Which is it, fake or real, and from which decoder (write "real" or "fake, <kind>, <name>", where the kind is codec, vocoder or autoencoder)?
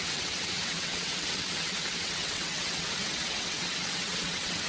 fake, vocoder, WaveNeXt